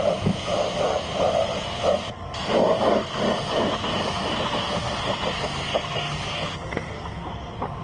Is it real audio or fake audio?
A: real